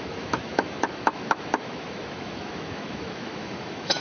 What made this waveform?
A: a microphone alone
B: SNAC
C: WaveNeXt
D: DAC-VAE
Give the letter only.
D